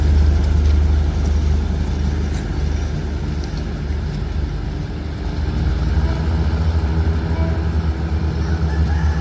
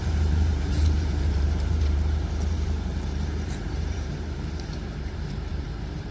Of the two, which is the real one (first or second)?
first